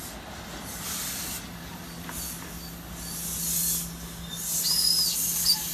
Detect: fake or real real